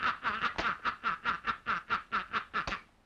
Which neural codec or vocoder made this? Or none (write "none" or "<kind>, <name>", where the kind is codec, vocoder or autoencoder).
none